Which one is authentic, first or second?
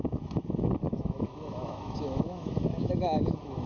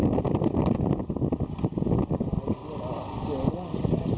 second